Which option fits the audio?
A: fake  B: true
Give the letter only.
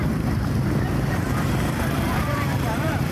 A